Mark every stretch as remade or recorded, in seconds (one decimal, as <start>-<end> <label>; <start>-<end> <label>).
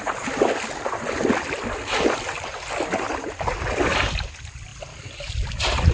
0.0-5.9 recorded